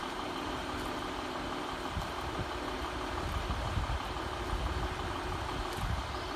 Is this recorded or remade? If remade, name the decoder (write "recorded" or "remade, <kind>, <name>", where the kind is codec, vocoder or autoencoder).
recorded